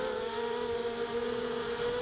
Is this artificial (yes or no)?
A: no